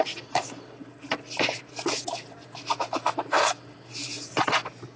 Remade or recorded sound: recorded